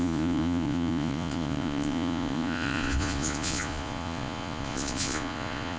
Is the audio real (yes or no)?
no